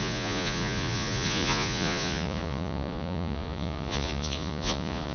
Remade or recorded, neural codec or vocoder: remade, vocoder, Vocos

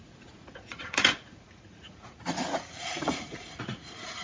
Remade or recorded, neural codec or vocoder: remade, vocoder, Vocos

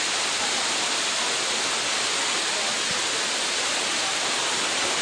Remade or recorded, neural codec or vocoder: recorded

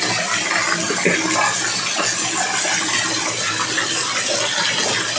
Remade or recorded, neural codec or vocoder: recorded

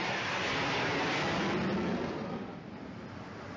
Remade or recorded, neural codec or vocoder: recorded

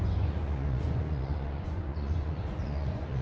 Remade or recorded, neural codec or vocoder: remade, vocoder, Vocos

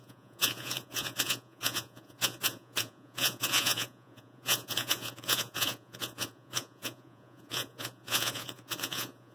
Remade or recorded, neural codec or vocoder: remade, vocoder, Vocos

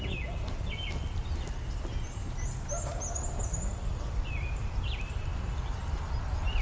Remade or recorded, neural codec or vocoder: recorded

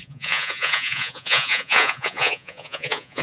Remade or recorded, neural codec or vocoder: remade, vocoder, Vocos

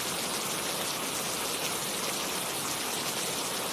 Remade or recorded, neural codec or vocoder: recorded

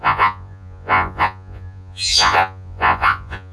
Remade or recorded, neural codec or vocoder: remade, vocoder, Vocos